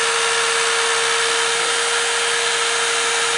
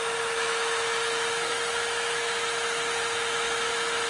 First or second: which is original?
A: first